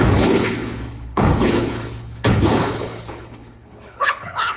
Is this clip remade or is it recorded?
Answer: remade